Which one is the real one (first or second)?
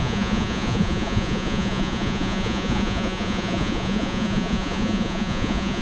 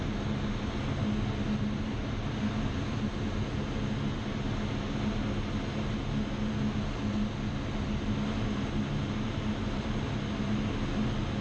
second